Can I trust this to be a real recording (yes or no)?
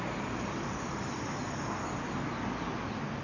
yes